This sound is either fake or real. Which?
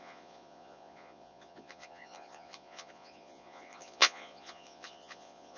fake